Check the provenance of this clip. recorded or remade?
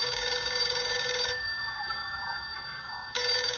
remade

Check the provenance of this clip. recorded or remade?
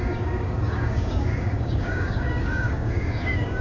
remade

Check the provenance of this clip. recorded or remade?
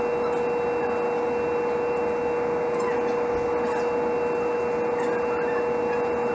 recorded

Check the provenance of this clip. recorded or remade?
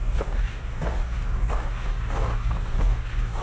remade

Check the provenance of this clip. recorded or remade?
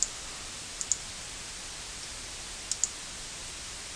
recorded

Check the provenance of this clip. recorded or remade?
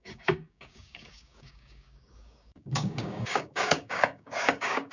remade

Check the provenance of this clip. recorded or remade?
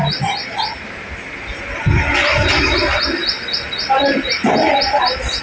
recorded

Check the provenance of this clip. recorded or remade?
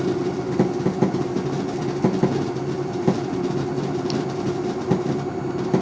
recorded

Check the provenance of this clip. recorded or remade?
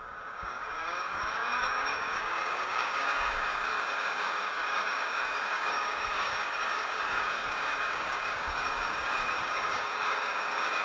remade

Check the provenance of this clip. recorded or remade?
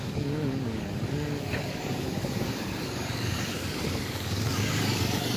remade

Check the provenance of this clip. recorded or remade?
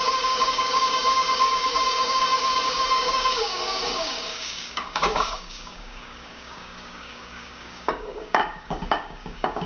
remade